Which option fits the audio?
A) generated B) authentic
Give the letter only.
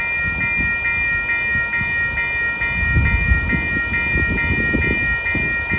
B